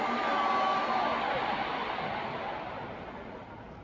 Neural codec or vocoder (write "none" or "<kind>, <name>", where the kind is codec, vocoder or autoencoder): none